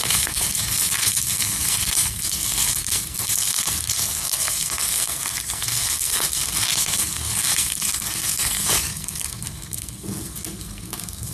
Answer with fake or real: fake